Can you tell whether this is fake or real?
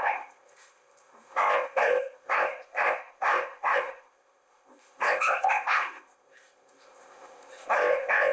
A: fake